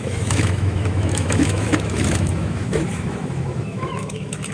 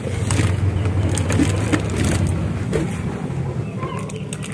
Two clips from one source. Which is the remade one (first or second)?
first